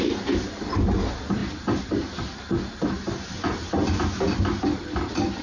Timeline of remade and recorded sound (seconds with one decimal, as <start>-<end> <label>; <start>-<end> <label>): 0.0-5.4 recorded